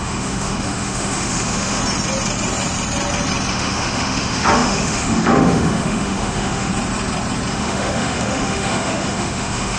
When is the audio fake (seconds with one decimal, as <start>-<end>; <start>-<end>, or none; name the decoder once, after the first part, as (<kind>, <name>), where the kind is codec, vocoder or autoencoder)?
0.0-1.8 (autoencoder, DAC-VAE); 3.5-6.7; 7.5-9.8